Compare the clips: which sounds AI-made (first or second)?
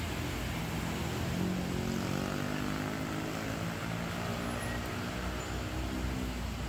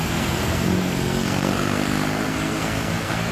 second